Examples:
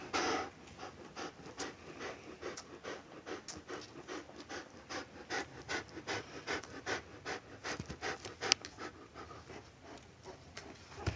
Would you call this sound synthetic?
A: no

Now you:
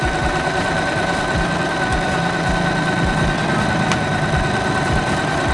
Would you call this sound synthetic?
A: yes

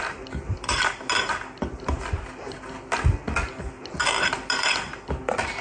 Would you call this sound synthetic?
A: no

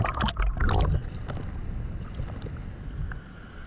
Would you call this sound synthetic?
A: no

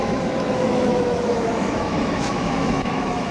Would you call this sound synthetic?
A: yes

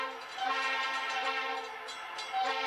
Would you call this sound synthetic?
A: yes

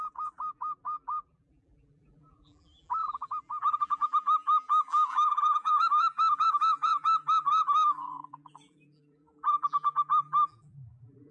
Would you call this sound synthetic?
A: yes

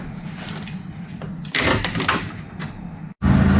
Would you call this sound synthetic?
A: no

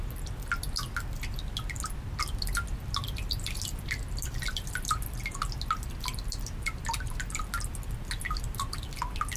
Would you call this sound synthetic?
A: no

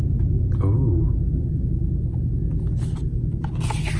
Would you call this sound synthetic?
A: no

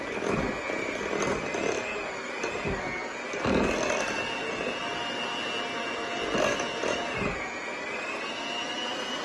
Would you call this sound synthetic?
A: no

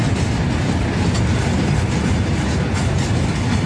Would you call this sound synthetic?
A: no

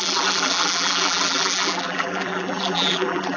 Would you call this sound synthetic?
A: yes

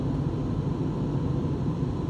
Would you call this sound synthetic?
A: no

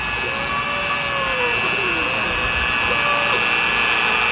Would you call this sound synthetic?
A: no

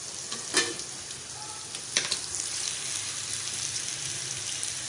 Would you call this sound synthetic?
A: no